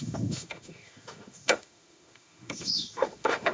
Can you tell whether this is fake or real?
fake